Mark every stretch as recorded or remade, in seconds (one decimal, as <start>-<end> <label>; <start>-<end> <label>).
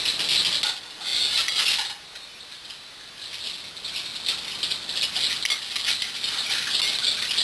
0.0-7.4 recorded